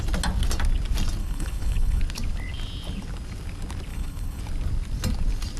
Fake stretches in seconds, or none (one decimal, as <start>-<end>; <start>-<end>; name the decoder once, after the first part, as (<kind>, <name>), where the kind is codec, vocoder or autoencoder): 1.2-2.0 (codec, HILCodec); 3.9-4.4